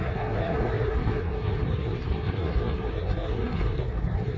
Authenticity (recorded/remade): remade